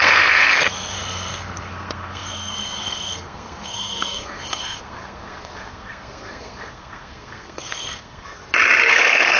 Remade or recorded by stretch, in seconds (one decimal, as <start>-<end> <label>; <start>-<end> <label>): 0.0-8.4 remade; 8.4-8.9 recorded; 8.9-9.4 remade